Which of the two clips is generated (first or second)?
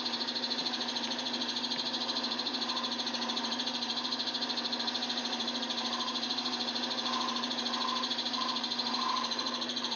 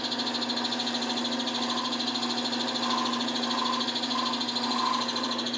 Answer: first